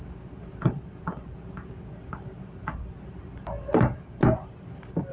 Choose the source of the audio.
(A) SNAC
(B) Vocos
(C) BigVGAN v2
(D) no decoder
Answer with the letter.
D